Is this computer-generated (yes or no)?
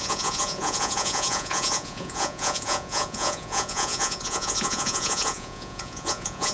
yes